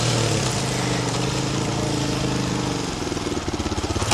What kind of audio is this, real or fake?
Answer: real